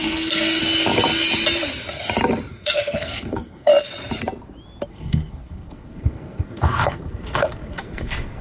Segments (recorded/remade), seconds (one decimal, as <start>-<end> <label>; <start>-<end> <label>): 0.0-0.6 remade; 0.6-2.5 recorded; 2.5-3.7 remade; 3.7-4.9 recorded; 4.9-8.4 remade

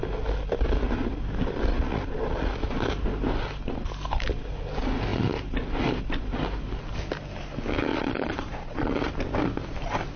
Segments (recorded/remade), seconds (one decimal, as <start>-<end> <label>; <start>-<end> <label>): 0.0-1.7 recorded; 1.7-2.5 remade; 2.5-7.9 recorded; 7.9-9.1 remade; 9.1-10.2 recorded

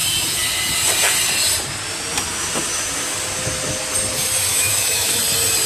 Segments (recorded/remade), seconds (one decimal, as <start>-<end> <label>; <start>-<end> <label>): 0.0-4.5 recorded; 4.5-5.2 remade; 5.2-5.7 recorded